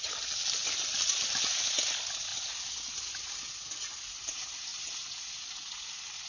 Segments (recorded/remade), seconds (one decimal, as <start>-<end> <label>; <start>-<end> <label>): 0.0-6.3 recorded